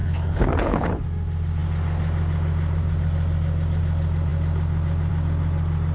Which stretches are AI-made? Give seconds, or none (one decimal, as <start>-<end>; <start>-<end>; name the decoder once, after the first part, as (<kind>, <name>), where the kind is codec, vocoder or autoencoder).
0.0-0.9 (codec, HILCodec)

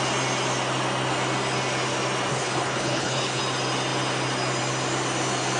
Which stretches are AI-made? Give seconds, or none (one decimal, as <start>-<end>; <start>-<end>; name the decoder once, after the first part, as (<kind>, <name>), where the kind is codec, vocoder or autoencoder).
2.3-3.4 (codec, HILCodec)

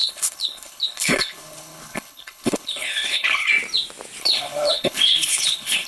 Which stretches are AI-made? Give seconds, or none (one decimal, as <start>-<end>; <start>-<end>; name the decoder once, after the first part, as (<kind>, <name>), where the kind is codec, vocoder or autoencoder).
0.0-3.5 (codec, HILCodec); 4.2-5.9

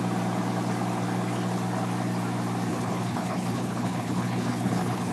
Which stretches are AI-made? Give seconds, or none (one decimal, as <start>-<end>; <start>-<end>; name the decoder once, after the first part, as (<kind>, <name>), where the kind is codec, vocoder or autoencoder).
2.7-5.1 (codec, HILCodec)